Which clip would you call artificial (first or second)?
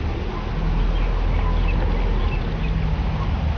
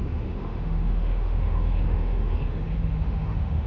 second